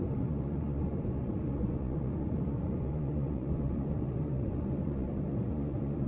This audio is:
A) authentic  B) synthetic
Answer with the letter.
B